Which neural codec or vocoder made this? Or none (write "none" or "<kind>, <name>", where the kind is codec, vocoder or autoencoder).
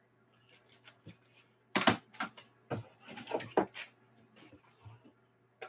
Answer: none